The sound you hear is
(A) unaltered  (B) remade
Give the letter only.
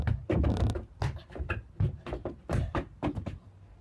A